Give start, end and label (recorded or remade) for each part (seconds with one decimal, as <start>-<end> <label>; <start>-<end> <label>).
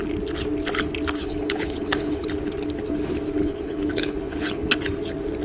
0.0-1.2 recorded; 1.2-2.3 remade; 2.3-3.4 recorded; 3.4-4.7 remade; 4.7-5.4 recorded